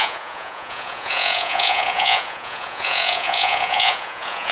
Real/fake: fake